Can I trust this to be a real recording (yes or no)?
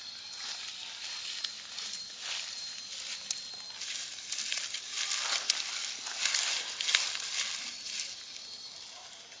yes